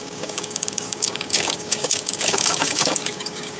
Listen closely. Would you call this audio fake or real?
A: fake